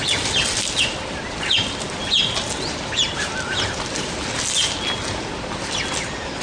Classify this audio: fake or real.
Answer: real